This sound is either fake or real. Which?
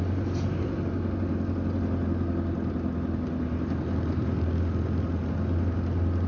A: real